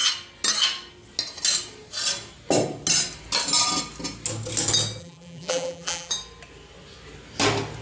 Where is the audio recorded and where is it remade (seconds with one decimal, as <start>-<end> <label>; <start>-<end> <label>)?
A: 0.0-5.0 recorded; 5.0-6.1 remade; 6.1-7.8 recorded